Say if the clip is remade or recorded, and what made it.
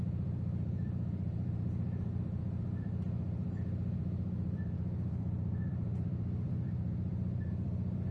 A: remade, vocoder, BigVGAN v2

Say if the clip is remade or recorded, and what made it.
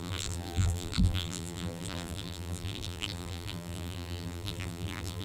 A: remade, vocoder, BigVGAN v2